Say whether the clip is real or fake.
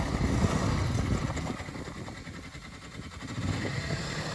real